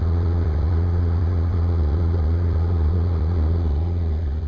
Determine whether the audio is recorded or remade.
remade